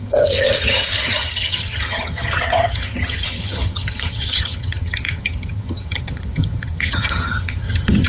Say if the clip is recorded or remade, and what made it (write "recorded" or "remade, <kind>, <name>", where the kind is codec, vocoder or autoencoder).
remade, vocoder, HiFi-GAN